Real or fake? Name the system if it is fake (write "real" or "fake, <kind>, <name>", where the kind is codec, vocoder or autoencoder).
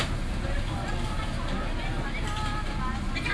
real